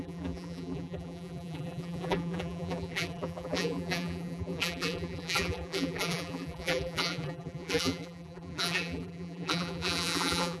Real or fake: fake